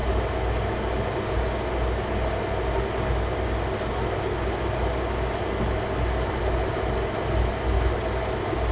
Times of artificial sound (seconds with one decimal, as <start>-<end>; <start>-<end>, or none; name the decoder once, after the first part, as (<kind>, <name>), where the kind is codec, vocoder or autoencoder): none